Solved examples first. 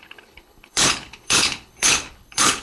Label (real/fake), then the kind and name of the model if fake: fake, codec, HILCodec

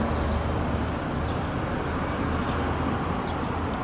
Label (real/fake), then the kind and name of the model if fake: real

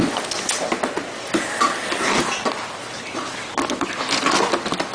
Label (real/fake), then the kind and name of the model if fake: real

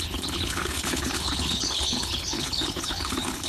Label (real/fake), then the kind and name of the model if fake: fake, codec, HILCodec